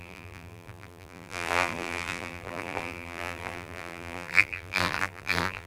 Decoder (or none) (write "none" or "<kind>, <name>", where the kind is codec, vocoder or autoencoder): vocoder, BigVGAN v2